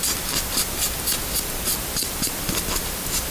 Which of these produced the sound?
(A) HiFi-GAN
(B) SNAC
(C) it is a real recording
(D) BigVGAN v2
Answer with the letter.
C